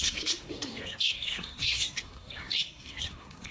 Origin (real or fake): fake